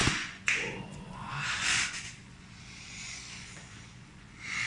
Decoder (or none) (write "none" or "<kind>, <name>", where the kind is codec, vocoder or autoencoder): vocoder, Vocos